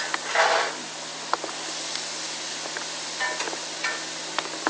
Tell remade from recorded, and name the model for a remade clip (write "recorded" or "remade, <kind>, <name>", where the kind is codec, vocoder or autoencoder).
recorded